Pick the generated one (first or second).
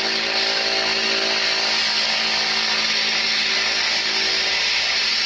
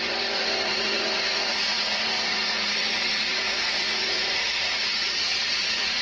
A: second